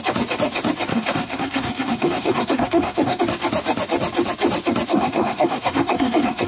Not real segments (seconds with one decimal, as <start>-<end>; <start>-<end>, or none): 0.9-3.2; 4.9-6.5